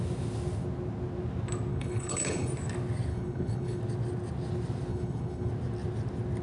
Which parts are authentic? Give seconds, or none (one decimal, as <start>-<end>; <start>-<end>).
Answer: 0.0-1.7; 2.5-3.1; 3.8-4.9; 5.5-6.4